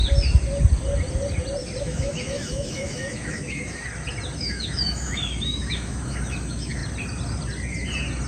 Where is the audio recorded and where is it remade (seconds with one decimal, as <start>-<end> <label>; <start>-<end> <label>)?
0.0-1.8 recorded; 1.8-3.8 remade; 3.8-4.4 recorded; 4.4-6.8 remade; 6.8-8.3 recorded